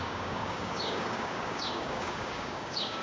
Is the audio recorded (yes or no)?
no